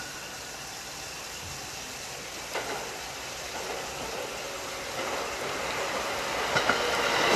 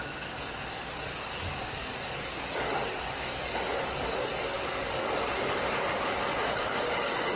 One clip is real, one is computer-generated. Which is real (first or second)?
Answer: first